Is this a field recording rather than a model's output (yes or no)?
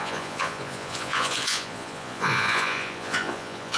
no